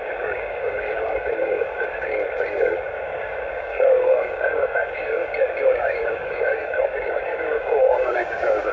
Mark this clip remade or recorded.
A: remade